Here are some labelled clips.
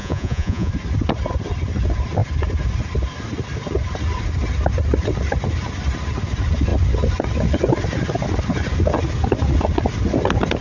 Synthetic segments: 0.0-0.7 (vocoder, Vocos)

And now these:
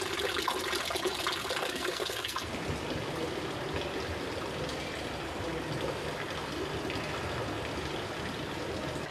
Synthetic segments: 1.6-2.5 (codec, SNAC)

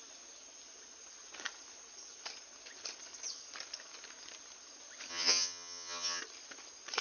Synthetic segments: 5.1-6.2 (vocoder, HiFi-GAN)

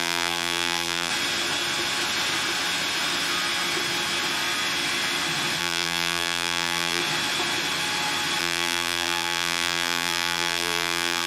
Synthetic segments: 0.0-1.1 (vocoder, BigVGAN v2); 5.6-7.0; 8.4-11.3

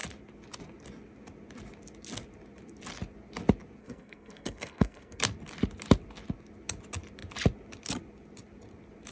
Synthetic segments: 3.8-5.2 (codec, SNAC)

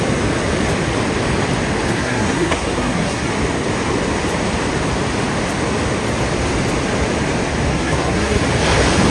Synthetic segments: 1.9-3.3 (codec, SNAC); 7.7-8.4